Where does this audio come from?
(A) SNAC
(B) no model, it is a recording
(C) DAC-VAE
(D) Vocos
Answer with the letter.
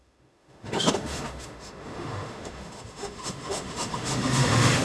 C